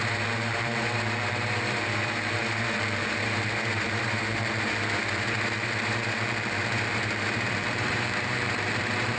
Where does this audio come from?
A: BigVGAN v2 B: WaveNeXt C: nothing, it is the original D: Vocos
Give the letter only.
A